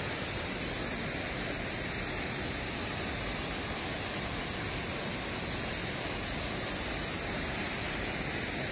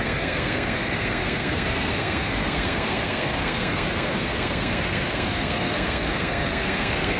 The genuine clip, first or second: first